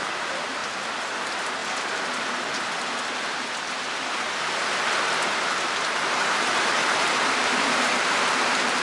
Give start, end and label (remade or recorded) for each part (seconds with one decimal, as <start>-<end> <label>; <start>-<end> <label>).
0.0-0.6 remade; 0.6-1.2 recorded; 1.2-1.6 remade; 1.6-6.1 recorded; 6.1-8.8 remade